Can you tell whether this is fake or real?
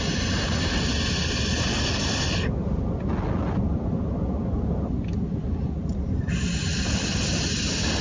real